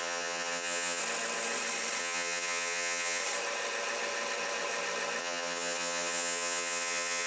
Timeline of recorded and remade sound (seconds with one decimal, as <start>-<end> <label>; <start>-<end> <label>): 0.0-1.0 remade; 1.0-2.0 recorded; 2.0-3.2 remade; 3.2-5.2 recorded; 5.2-7.3 remade